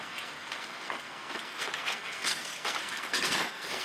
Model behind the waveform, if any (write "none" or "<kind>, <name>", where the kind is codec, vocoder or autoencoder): codec, SNAC